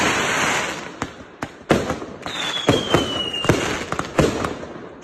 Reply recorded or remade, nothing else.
recorded